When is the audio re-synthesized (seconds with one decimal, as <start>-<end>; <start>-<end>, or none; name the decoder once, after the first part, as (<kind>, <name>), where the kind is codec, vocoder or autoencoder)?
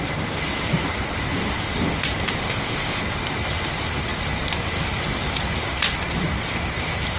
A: 2.4-3.0 (codec, ZipCodec)